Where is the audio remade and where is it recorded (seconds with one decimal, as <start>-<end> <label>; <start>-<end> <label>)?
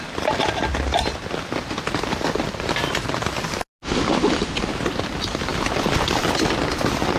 0.0-7.2 recorded